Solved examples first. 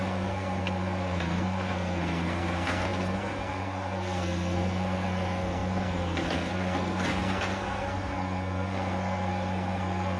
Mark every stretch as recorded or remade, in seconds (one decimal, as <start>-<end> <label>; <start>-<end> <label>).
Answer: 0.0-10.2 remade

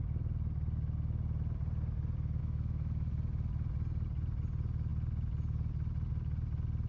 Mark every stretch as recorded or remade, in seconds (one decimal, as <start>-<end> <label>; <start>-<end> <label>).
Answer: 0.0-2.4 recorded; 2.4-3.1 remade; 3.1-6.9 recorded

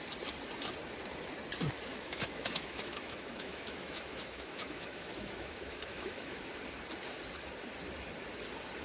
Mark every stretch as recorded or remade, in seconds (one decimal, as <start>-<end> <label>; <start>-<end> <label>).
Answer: 0.0-1.9 recorded; 1.9-6.4 remade; 6.4-8.8 recorded

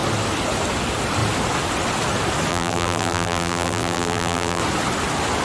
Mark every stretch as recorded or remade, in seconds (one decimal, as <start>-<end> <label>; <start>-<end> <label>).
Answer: 0.0-2.5 recorded; 2.5-4.6 remade; 4.6-5.4 recorded